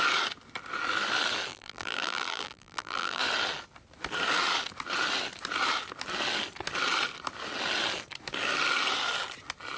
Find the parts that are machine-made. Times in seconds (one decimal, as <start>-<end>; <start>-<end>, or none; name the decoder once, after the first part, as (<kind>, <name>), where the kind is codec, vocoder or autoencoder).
1.5-3.2 (vocoder, BigVGAN v2)